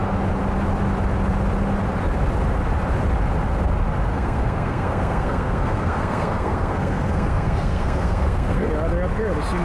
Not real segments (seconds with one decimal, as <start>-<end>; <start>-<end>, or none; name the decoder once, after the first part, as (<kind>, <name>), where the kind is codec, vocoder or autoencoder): 4.1-8.7 (codec, SNAC)